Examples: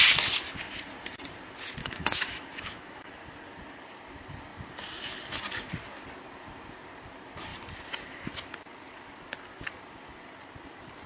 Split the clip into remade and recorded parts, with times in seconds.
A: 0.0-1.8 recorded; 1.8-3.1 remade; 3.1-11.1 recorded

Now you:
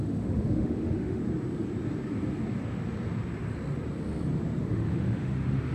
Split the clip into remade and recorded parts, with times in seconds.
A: 0.0-1.2 remade; 1.2-4.6 recorded; 4.6-5.7 remade

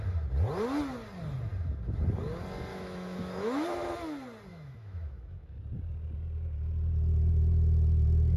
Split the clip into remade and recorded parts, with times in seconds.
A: 0.0-2.7 recorded; 2.7-3.9 remade; 3.9-4.5 recorded; 4.5-5.6 remade; 5.6-8.4 recorded

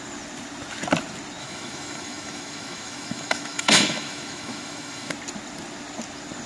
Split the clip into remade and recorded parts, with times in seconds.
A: 0.0-1.4 recorded; 1.4-5.1 remade; 5.1-6.5 recorded

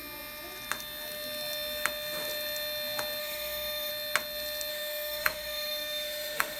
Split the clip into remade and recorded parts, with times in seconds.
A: 0.0-3.2 recorded; 3.2-3.9 remade; 3.9-4.7 recorded; 4.7-6.6 remade

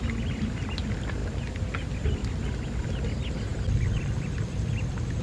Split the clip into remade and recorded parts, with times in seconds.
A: 0.0-5.2 recorded

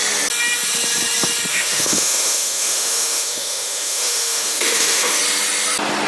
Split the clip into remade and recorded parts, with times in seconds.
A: 0.0-1.5 recorded; 1.5-5.2 remade; 5.2-6.1 recorded